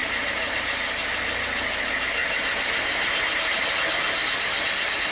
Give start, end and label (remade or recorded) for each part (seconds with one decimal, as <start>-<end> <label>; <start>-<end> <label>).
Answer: 0.0-0.5 remade; 0.5-2.2 recorded; 2.2-3.6 remade; 3.6-5.1 recorded